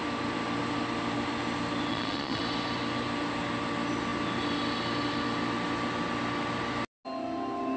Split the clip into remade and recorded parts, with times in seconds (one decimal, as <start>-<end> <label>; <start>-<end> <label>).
0.0-1.9 recorded; 1.9-2.4 remade; 2.4-7.8 recorded